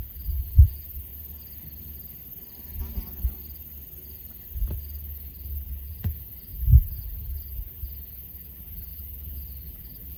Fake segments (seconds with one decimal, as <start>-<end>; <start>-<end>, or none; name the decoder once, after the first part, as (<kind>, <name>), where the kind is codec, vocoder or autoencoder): 0.0-1.1 (vocoder, BigVGAN v2); 5.3-10.2